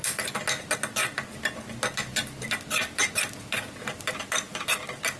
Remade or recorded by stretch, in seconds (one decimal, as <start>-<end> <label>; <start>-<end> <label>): 0.0-5.2 recorded